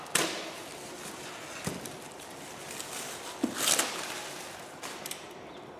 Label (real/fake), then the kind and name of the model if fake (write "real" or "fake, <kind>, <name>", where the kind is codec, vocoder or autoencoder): real